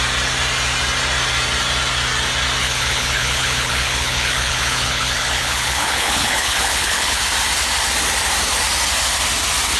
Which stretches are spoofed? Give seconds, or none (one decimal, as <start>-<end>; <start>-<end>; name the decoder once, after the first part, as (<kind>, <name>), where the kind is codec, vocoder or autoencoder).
2.6-7.2 (codec, HILCodec)